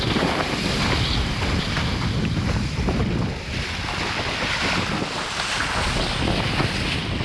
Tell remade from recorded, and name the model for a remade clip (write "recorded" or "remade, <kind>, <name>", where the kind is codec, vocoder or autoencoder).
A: recorded